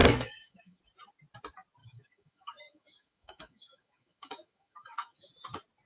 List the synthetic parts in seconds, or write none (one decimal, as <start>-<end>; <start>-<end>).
0.0-0.8; 1.8-5.3